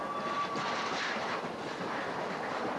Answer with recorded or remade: remade